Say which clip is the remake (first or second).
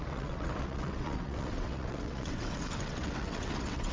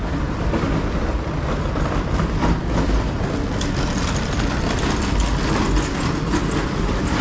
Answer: first